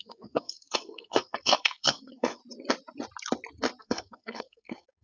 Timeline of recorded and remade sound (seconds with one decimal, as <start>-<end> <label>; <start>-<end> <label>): 0.0-2.4 remade; 2.4-3.8 recorded; 3.8-5.0 remade